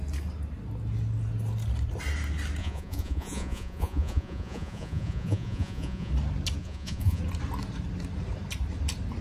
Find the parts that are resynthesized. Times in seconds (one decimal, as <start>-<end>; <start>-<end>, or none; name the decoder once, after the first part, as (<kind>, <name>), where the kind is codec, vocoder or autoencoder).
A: 2.6-6.1 (vocoder, Vocos); 6.6-7.2